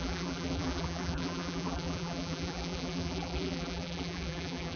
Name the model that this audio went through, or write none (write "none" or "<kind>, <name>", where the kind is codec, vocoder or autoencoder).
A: vocoder, BigVGAN v2